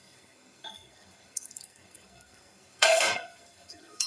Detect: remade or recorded remade